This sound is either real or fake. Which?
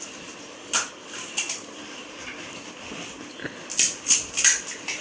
real